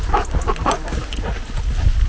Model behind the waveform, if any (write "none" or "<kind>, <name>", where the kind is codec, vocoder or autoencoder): none